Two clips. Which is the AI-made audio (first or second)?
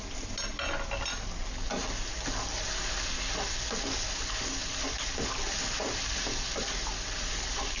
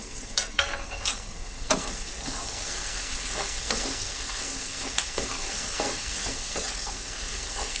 second